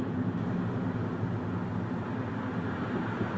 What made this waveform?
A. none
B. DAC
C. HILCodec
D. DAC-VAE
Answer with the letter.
A